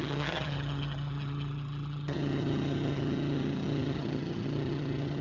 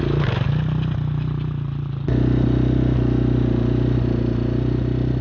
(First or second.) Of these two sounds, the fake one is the first